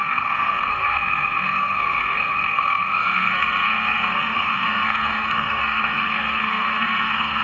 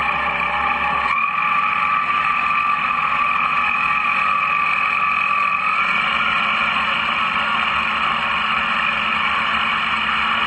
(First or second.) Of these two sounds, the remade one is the first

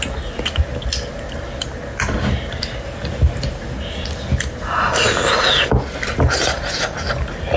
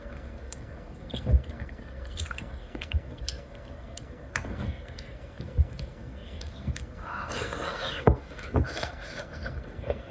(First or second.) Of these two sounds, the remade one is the second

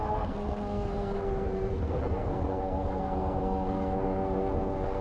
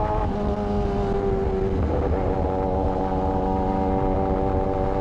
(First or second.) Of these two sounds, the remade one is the first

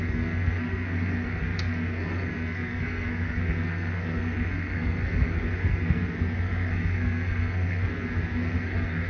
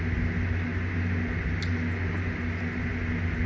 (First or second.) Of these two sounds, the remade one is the first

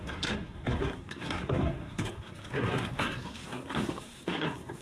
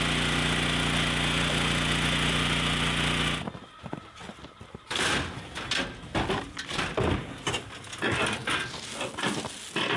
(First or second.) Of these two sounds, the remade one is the first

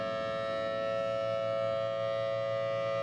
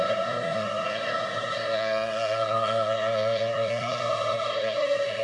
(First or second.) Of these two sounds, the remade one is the second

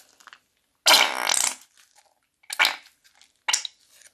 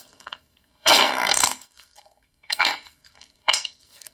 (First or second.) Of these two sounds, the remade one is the second